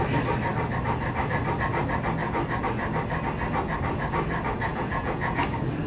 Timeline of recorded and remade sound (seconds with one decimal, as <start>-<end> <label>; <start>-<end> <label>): 0.0-4.7 recorded; 4.7-5.4 remade; 5.4-5.9 recorded